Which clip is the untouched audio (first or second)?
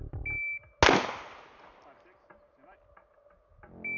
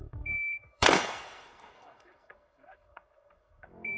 first